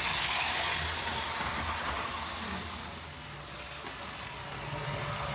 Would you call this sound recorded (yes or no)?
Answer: yes